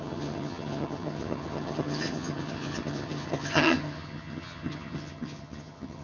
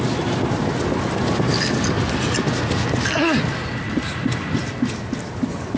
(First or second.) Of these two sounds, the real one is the second